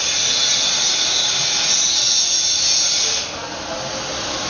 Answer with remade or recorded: recorded